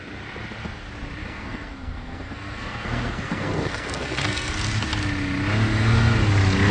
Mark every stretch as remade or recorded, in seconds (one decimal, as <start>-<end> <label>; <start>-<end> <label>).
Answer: 0.0-1.2 recorded; 1.2-4.5 remade; 4.5-6.7 recorded